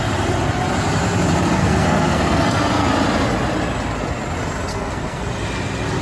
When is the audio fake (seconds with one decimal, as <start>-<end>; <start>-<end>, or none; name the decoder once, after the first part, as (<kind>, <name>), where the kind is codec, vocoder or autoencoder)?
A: 1.6-2.9 (codec, SNAC); 4.7-5.2